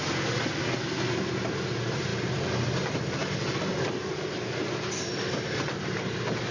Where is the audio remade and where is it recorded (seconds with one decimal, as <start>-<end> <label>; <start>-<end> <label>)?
0.0-6.5 recorded